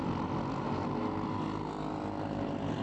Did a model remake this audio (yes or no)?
no